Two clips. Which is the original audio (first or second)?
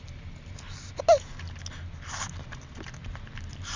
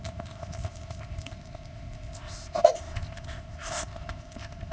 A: first